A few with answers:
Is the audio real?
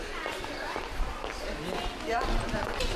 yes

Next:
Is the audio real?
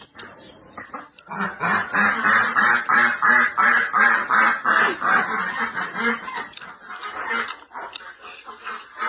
yes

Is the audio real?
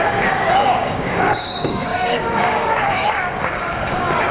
no